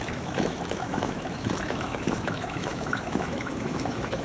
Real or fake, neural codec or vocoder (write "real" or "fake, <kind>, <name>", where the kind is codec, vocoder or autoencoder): fake, autoencoder, DAC-VAE